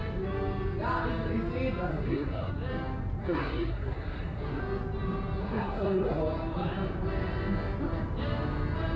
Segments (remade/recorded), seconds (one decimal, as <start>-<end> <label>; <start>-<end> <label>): 0.0-1.9 recorded; 1.9-2.5 remade; 2.5-3.2 recorded; 3.2-4.6 remade; 4.6-5.4 recorded; 5.4-6.2 remade; 6.2-9.0 recorded